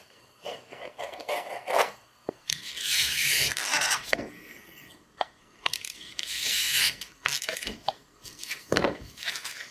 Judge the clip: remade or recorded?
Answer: remade